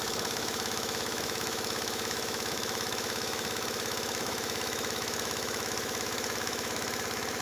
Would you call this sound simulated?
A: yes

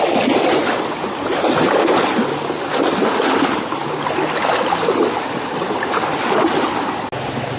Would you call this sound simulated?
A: no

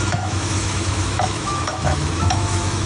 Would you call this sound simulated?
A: yes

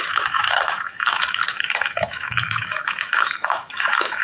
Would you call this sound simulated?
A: yes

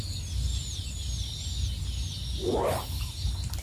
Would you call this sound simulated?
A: no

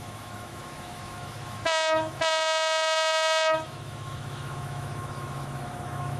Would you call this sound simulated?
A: yes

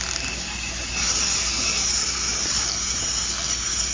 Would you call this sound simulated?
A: no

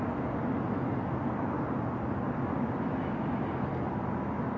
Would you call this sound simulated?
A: no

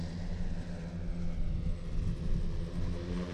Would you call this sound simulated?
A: no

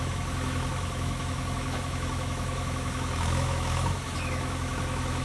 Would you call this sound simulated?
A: yes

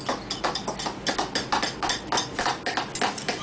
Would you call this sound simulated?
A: no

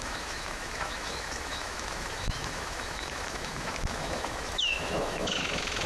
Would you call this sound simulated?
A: yes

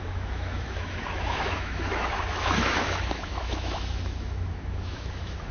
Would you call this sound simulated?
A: yes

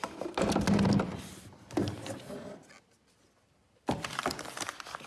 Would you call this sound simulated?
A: no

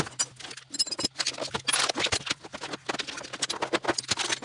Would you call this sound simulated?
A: no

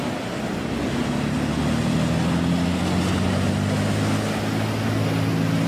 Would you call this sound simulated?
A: no